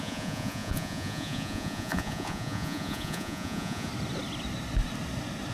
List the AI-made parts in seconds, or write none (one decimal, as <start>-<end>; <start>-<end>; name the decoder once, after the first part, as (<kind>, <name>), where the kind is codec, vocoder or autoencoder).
0.0-3.9 (vocoder, Vocos)